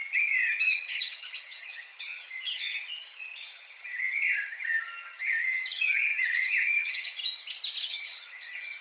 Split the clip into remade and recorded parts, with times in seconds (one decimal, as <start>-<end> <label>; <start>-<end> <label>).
0.0-7.2 remade; 7.2-7.8 recorded; 7.8-8.8 remade